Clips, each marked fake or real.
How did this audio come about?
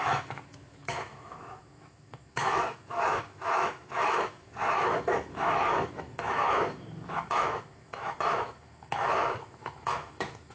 fake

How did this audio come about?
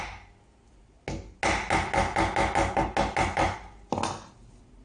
real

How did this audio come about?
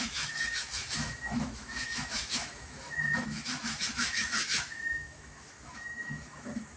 fake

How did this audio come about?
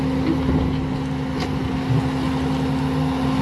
real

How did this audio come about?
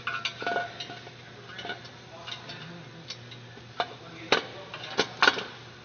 real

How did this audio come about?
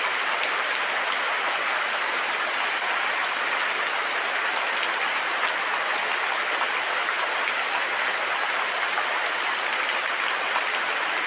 real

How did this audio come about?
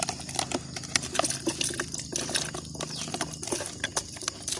real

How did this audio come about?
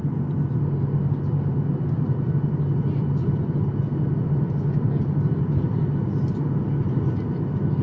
real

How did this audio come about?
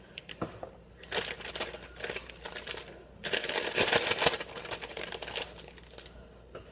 real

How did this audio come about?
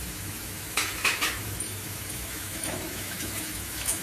fake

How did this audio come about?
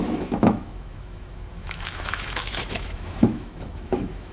fake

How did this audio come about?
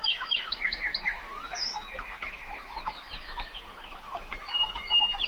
fake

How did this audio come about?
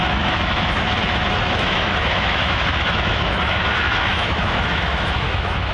fake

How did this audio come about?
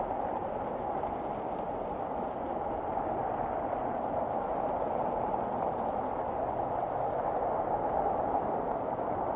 real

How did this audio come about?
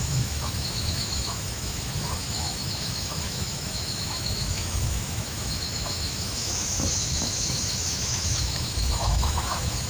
fake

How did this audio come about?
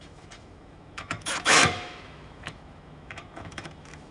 fake